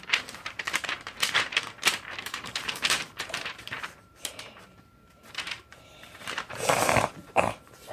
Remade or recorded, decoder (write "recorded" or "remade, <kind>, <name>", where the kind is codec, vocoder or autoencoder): remade, vocoder, BigVGAN v2